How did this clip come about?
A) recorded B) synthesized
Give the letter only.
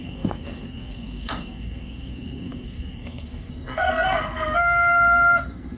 B